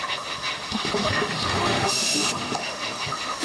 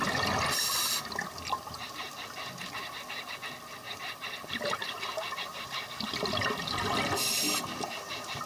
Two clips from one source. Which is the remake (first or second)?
first